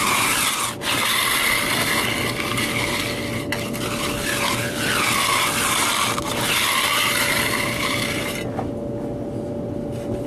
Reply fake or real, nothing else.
real